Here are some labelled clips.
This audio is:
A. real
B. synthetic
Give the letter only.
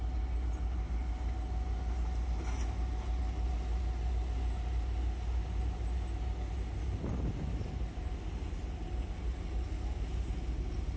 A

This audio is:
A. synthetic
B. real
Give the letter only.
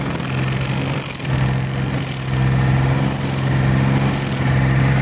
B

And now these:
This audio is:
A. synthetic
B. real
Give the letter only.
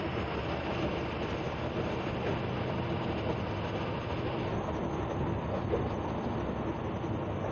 B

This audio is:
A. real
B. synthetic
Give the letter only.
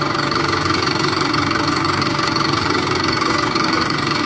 B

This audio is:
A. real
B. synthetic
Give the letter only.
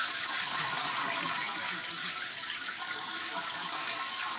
B